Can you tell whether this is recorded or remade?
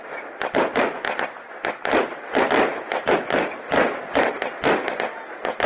recorded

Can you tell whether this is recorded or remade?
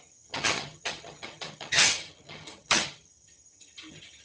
remade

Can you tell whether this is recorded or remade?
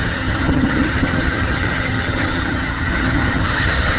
remade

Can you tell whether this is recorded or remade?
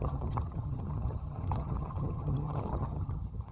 remade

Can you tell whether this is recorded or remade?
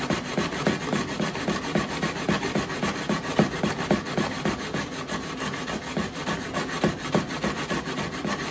recorded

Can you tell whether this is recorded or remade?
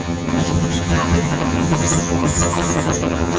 remade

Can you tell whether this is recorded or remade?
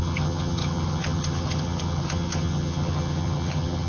remade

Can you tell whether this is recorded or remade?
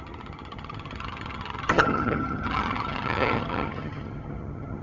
remade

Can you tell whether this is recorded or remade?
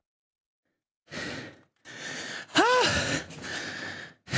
recorded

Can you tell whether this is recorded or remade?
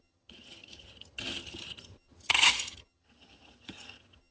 remade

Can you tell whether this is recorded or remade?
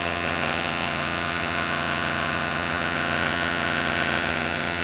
remade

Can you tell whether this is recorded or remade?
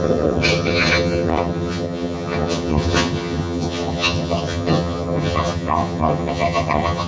remade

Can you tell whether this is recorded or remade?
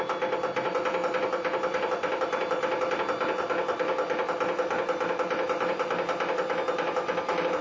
recorded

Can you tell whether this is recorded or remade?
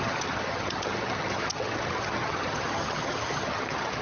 remade